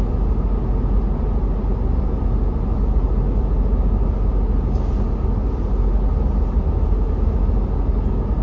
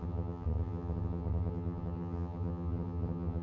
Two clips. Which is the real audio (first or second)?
first